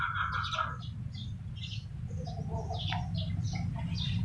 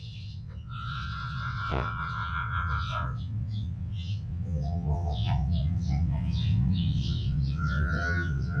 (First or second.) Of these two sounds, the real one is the first